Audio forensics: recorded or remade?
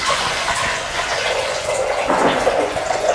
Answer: remade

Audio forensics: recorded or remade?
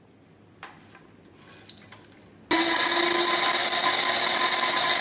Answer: recorded